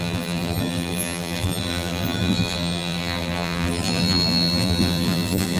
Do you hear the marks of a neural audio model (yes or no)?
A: yes